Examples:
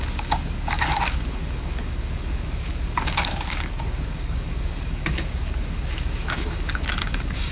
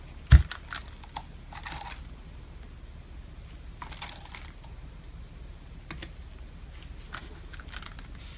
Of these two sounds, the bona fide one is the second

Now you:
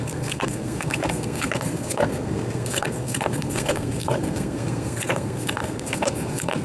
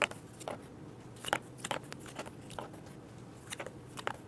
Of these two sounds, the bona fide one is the second